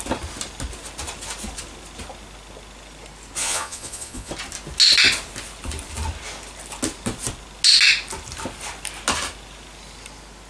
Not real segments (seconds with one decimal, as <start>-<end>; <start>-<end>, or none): 3.4-4.3